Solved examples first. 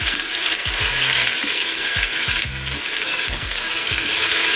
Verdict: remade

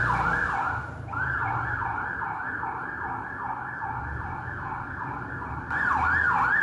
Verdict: recorded